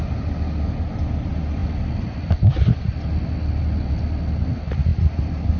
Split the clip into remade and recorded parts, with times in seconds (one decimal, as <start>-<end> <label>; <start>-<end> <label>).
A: 0.0-5.6 recorded